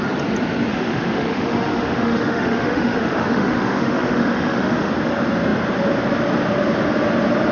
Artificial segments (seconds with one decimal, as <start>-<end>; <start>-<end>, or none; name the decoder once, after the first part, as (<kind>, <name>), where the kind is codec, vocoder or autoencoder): 0.7-4.9 (autoencoder, DAC-VAE)